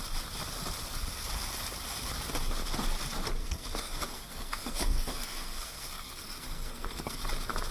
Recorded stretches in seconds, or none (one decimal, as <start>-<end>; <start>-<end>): 0.0-3.4; 7.2-7.7